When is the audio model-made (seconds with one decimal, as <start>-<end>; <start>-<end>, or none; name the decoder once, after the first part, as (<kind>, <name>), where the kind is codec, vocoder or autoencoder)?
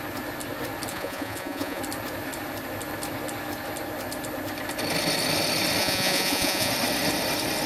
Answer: 0.9-1.8 (vocoder, Vocos); 5.8-6.7